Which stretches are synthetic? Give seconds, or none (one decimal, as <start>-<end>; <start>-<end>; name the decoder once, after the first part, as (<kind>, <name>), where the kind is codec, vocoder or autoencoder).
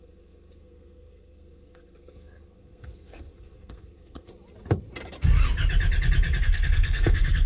0.0-4.3 (codec, SNAC); 6.4-7.5